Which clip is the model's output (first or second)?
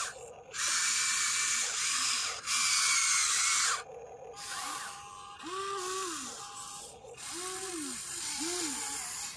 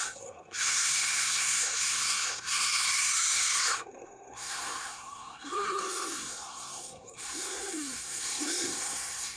second